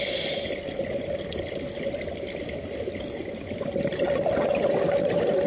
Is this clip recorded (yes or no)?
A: yes